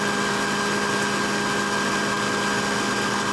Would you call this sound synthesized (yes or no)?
no